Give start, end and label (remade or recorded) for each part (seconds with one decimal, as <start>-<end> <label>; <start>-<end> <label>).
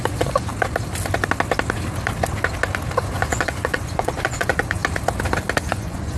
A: 0.0-0.5 remade; 0.5-3.0 recorded; 3.0-4.8 remade; 4.8-5.6 recorded; 5.6-6.2 remade